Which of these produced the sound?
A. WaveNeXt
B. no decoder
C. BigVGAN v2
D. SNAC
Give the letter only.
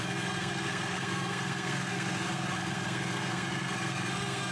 D